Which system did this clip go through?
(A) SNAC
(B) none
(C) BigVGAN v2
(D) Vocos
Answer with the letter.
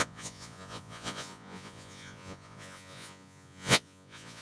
D